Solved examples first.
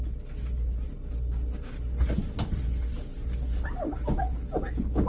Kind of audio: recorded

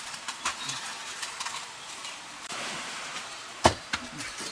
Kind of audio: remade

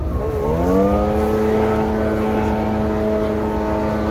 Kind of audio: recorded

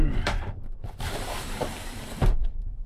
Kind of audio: remade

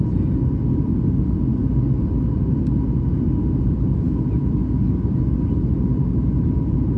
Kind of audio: recorded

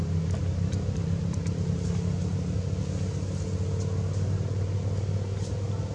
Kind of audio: recorded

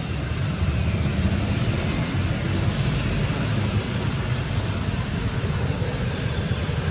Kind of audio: remade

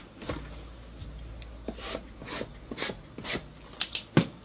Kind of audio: recorded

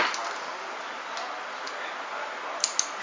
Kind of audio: recorded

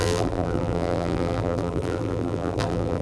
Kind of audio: remade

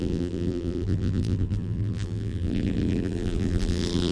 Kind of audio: remade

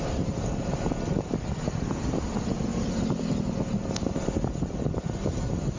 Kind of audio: recorded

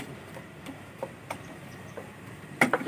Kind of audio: remade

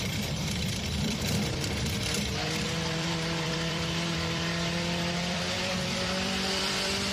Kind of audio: remade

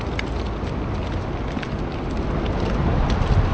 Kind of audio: recorded